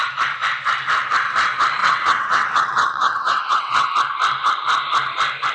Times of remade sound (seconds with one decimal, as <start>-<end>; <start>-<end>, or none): 1.8-3.9